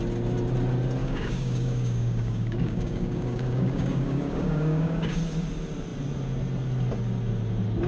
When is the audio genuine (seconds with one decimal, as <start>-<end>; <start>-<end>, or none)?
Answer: 0.0-1.0; 5.2-7.9